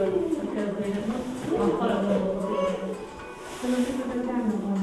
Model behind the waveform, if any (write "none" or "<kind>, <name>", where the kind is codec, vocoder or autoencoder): vocoder, BigVGAN v2